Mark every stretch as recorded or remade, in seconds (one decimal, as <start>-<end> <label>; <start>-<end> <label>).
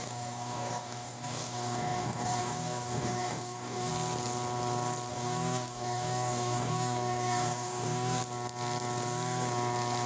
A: 0.0-3.9 remade; 3.9-5.1 recorded; 5.1-8.2 remade; 8.2-10.1 recorded